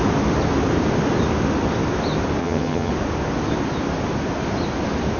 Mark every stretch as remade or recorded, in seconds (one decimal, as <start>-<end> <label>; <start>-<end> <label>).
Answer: 0.0-2.4 recorded; 2.4-2.9 remade; 2.9-5.2 recorded